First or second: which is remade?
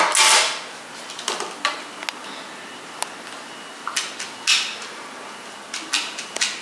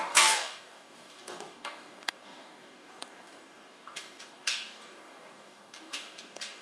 second